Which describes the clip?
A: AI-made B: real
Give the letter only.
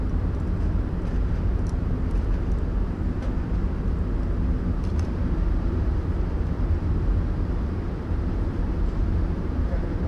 A